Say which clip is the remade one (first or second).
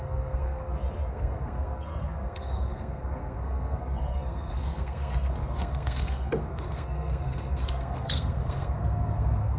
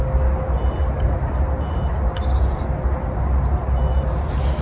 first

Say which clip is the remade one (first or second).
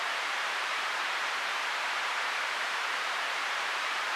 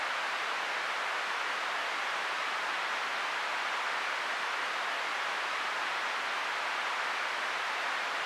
first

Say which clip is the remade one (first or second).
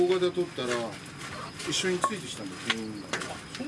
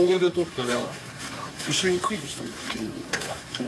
second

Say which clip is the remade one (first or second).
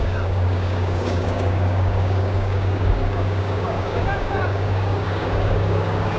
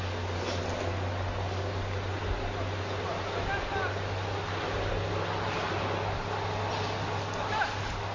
first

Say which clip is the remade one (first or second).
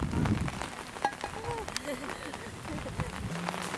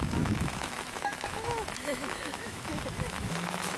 second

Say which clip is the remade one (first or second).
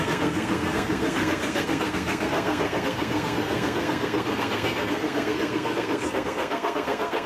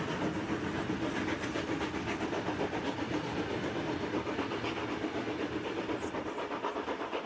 first